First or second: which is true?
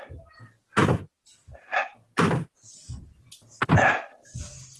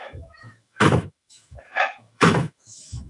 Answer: first